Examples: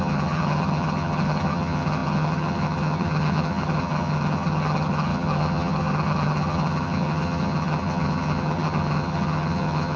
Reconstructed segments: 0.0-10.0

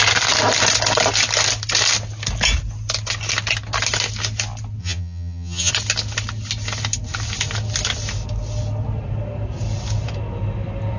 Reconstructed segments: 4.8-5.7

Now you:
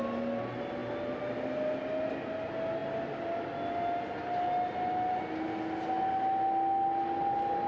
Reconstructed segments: none

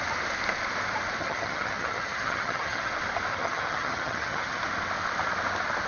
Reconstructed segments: 1.2-2.9; 3.3-4.6